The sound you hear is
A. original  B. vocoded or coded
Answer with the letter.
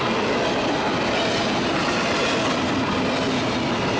A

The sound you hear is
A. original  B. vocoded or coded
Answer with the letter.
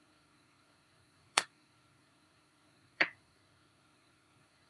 B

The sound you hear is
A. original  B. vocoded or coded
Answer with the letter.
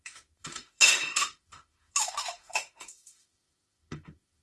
B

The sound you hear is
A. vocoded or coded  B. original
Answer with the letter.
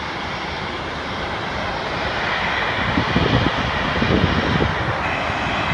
B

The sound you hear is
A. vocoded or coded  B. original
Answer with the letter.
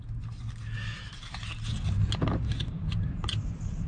B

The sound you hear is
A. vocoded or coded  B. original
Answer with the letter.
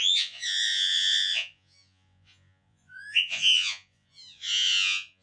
A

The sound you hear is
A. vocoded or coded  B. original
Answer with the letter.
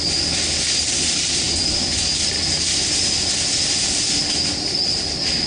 B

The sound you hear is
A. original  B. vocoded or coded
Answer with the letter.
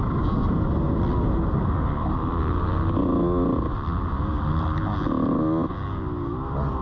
A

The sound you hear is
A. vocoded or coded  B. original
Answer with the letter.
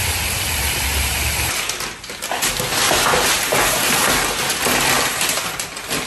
B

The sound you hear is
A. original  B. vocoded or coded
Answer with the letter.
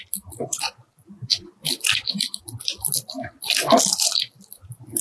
A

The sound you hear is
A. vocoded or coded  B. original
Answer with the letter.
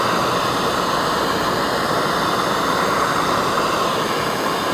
B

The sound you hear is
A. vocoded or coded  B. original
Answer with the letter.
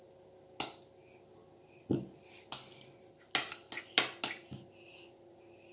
B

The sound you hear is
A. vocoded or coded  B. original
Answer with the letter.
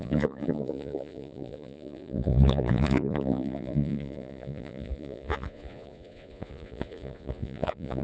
A